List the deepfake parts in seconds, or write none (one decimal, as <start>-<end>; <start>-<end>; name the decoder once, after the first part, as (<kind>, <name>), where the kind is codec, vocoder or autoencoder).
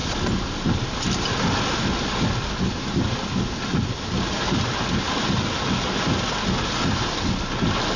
none